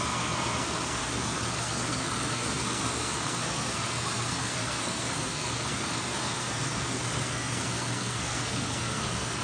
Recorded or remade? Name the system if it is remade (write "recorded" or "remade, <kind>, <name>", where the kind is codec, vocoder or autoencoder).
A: remade, codec, SNAC